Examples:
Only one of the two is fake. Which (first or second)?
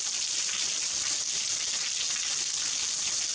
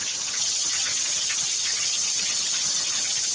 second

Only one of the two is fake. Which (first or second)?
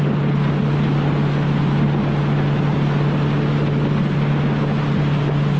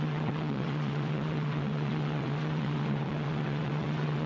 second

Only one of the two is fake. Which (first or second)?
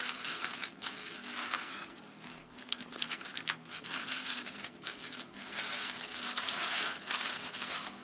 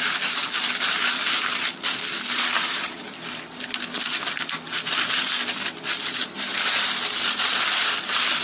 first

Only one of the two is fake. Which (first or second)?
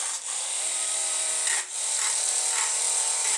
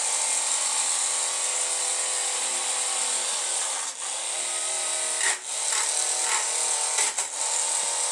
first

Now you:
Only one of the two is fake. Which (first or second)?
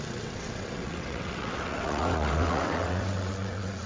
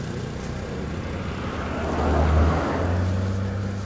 first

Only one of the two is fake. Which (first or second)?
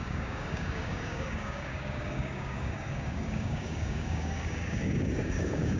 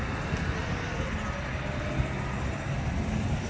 first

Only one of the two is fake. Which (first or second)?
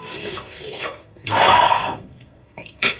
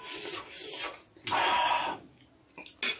first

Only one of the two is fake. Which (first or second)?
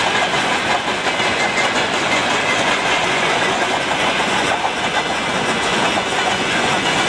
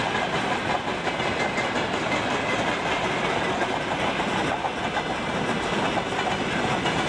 first